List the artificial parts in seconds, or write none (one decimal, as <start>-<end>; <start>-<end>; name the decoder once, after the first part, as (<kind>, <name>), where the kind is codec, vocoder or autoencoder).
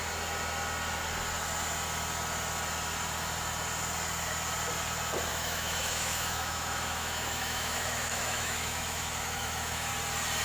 5.3-9.9 (autoencoder, DAC-VAE)